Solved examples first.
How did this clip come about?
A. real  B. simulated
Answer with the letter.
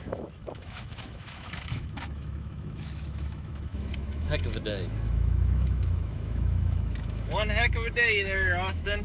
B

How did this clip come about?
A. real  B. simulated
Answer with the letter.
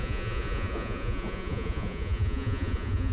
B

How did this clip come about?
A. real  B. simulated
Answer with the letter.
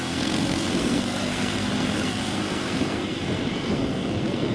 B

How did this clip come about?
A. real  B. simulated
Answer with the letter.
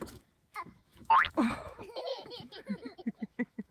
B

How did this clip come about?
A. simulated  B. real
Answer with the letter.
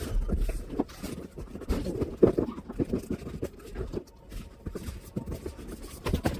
B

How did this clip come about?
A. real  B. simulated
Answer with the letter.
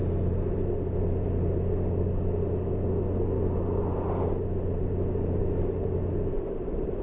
A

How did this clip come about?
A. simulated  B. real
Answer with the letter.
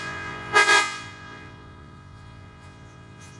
A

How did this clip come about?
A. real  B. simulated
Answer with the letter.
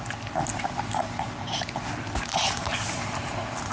A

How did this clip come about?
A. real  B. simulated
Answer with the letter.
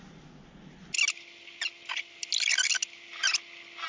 A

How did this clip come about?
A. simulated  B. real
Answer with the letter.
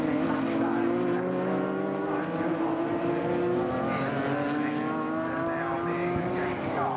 B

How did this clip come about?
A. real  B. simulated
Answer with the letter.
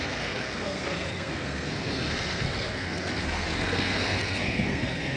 B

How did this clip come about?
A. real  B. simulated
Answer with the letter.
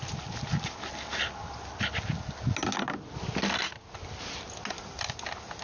A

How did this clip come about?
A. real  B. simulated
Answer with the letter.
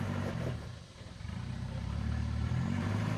B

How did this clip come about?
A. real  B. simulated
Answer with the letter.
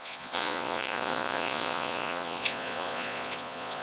B